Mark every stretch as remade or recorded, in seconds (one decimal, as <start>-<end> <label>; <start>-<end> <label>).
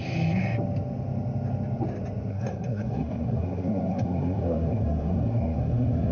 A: 0.0-2.3 recorded; 2.3-6.1 remade